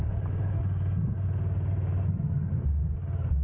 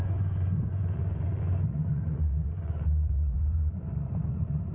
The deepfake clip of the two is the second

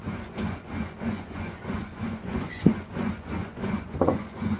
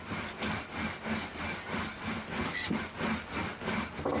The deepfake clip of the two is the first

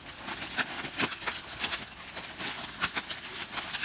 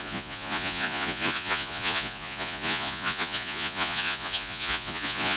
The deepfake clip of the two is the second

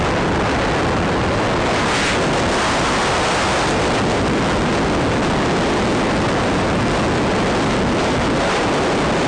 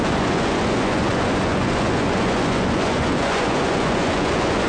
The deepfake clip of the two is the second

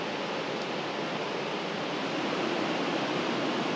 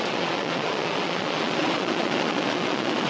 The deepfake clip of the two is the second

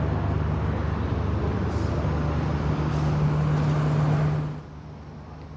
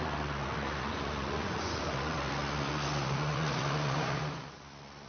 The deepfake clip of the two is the second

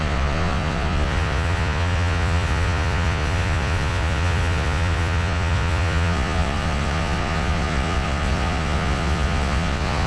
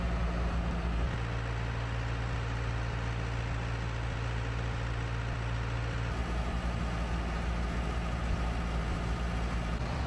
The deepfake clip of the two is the first